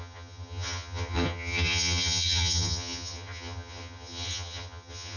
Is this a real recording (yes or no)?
no